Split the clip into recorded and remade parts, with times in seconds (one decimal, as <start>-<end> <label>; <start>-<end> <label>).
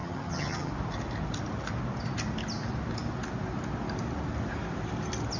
0.0-0.7 remade; 0.7-5.4 recorded